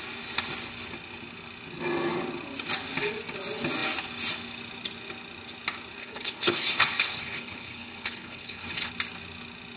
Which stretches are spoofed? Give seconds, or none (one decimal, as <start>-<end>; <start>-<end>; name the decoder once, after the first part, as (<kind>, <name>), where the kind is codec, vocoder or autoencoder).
6.0-8.9 (codec, HILCodec)